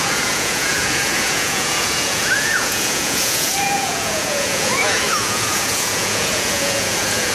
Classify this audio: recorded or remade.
remade